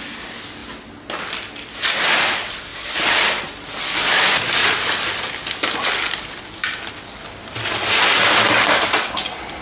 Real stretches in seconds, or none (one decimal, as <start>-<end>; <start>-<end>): 0.0-2.7; 7.7-9.6